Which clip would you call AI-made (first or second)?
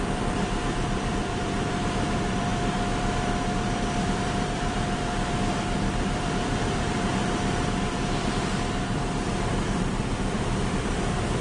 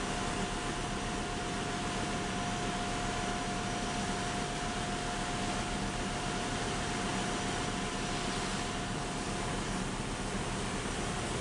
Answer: first